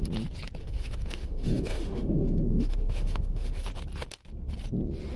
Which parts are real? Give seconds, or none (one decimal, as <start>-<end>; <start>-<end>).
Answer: 0.0-0.6; 3.7-5.2